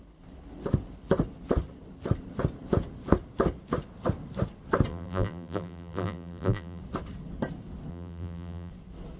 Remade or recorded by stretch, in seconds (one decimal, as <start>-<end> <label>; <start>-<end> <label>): 0.0-4.9 recorded; 4.9-6.8 remade; 6.8-7.9 recorded; 7.9-8.7 remade; 8.7-9.2 recorded